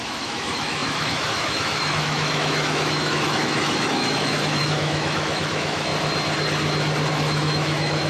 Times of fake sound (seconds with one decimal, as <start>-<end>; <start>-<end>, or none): 0.0-5.9; 7.1-8.1